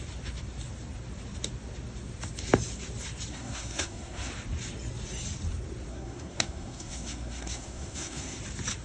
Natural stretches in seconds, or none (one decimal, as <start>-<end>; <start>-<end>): 0.0-3.3; 4.3-5.9; 8.4-8.8